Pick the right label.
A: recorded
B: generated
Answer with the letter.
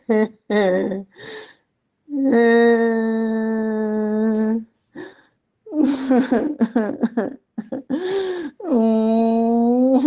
A